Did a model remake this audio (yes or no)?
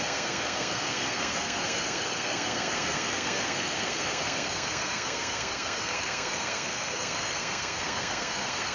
yes